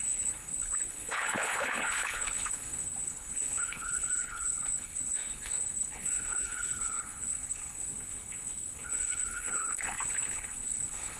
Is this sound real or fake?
fake